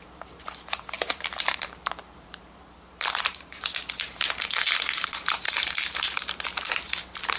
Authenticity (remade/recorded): remade